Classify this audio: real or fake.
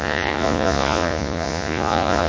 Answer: fake